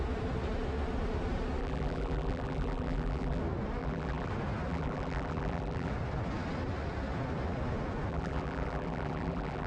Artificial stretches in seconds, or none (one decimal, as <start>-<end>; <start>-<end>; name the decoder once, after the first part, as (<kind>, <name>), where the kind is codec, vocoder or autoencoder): 1.6-3.4 (vocoder, BigVGAN v2); 3.8-4.3; 4.7-5.9; 8.1-9.7